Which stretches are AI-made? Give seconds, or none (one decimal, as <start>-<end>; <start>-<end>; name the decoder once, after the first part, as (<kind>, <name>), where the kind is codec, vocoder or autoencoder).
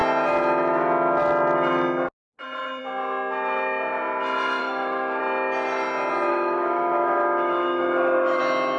4.6-5.2 (autoencoder, DAC-VAE); 6.3-8.4